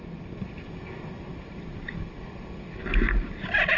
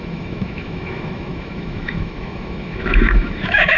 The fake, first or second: second